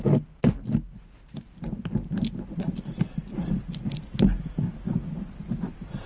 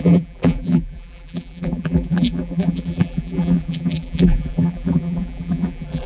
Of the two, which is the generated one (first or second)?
second